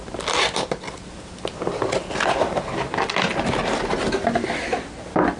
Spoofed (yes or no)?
no